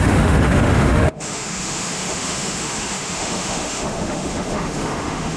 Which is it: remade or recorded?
remade